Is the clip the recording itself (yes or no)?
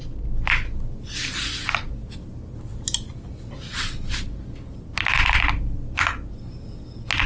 yes